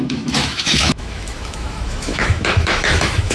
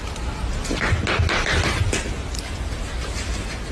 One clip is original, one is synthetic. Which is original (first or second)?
second